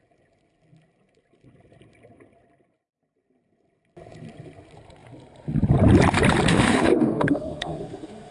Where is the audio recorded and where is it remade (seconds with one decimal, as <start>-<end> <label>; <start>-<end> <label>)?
0.0-6.5 recorded; 6.5-8.3 remade

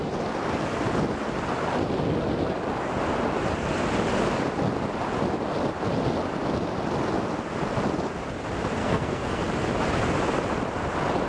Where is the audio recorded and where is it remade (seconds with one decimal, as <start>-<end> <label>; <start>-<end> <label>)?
0.0-8.8 recorded; 8.8-9.4 remade; 9.4-11.3 recorded

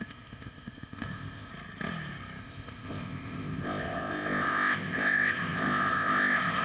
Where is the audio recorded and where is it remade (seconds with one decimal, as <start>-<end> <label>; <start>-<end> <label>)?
0.0-1.5 remade; 1.5-2.4 recorded; 2.4-6.6 remade

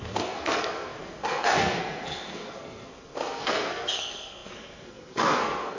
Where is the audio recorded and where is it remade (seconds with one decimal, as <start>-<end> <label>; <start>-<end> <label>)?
0.0-5.8 remade

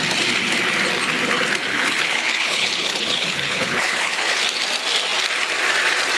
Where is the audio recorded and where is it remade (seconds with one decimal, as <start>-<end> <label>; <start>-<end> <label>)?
0.0-1.7 recorded; 1.7-4.4 remade; 4.4-6.2 recorded

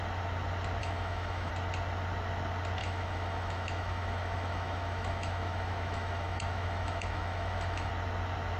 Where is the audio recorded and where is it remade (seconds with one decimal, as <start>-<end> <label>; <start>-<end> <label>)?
0.0-0.8 recorded; 0.8-1.5 remade; 1.5-2.8 recorded; 2.8-7.9 remade; 7.9-8.6 recorded

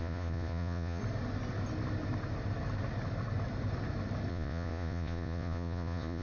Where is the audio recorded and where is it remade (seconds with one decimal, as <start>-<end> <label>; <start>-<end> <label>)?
0.0-1.0 remade; 1.0-4.3 recorded; 4.3-6.2 remade

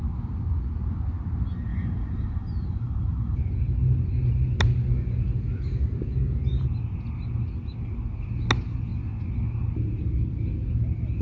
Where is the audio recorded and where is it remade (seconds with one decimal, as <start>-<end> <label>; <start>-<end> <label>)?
0.0-1.7 recorded; 1.7-3.4 remade; 3.4-11.2 recorded